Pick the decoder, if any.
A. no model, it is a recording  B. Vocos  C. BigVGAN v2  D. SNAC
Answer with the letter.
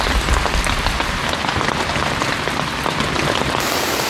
C